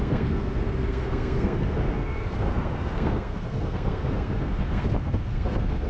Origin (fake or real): fake